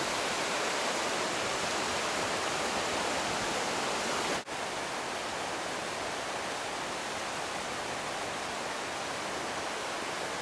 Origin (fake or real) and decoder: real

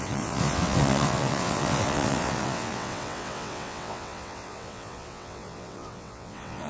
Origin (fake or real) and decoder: fake, vocoder, WaveNeXt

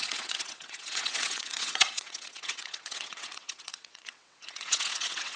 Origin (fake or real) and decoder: fake, vocoder, WaveNeXt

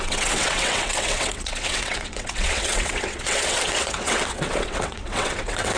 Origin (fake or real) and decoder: fake, vocoder, WaveNeXt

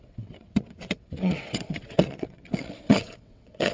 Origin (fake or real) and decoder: fake, vocoder, WaveNeXt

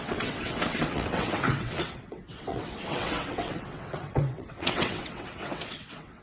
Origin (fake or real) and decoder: fake, vocoder, WaveNeXt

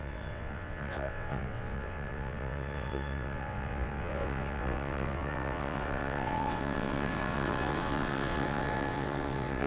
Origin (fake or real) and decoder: fake, vocoder, WaveNeXt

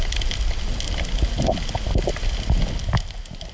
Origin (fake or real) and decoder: real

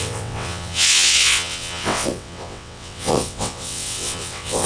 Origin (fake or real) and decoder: fake, vocoder, WaveNeXt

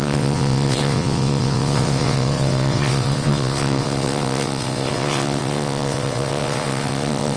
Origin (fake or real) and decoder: fake, vocoder, WaveNeXt